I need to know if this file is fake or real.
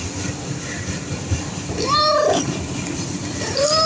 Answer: real